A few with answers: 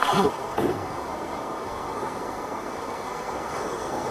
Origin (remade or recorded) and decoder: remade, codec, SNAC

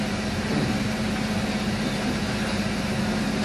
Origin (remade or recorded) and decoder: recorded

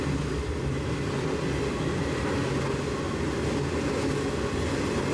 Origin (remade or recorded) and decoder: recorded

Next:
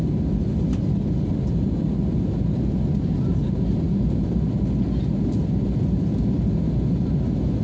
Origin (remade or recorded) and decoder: recorded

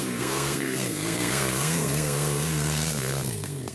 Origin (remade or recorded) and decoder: remade, codec, SNAC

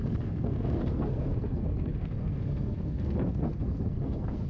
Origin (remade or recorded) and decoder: remade, codec, SNAC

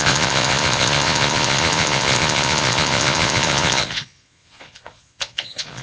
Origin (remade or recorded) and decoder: remade, vocoder, Vocos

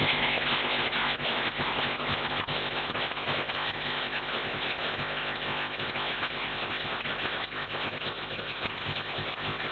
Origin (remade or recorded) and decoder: remade, codec, ZipCodec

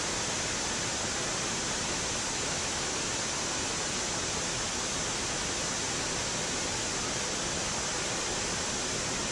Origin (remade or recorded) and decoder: recorded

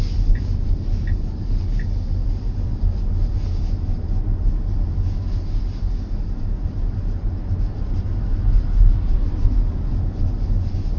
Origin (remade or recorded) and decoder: recorded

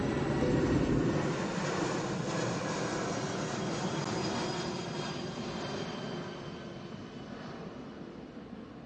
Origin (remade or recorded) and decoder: recorded